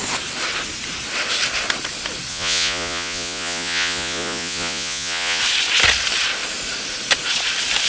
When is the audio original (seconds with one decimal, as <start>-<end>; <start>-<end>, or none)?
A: 0.0-2.3; 5.4-7.9